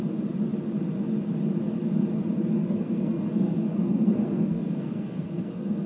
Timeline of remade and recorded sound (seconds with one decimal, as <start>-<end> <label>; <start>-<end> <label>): 0.0-2.6 recorded; 2.6-5.9 remade